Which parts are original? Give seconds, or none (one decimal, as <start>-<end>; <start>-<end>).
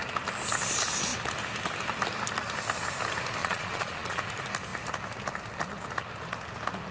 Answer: 0.0-3.4; 4.2-6.9